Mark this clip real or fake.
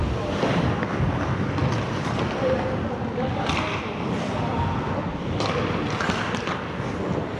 real